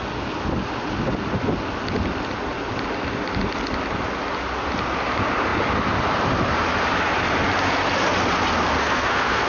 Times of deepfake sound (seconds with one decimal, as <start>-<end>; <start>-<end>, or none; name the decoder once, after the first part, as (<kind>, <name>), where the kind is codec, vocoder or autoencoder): 8.8-9.5 (codec, SNAC)